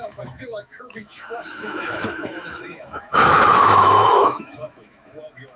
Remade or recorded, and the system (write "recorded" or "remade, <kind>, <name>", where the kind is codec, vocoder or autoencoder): remade, autoencoder, DAC-VAE